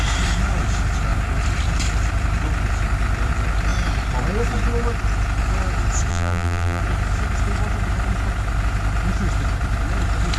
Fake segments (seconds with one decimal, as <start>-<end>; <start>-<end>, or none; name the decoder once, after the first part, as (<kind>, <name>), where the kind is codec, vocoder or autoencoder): 6.1-6.8 (vocoder, BigVGAN v2)